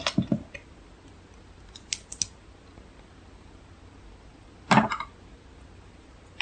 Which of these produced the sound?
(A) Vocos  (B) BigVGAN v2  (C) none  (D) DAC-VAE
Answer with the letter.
C